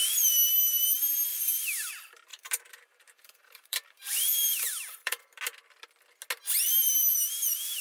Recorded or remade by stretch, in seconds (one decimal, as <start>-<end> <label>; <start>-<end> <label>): 0.0-1.3 recorded; 1.3-1.9 remade; 1.9-2.3 recorded; 2.3-5.4 remade; 5.4-7.8 recorded